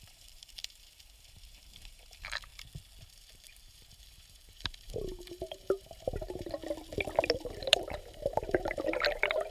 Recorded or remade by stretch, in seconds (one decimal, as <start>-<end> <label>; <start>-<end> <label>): 0.0-2.5 remade; 2.5-3.0 recorded; 3.0-6.6 remade; 6.6-7.3 recorded; 7.3-9.5 remade